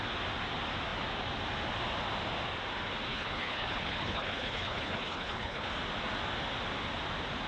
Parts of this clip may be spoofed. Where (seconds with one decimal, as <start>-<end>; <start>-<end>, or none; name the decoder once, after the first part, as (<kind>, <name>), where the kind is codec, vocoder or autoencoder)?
3.1-5.7 (codec, HILCodec)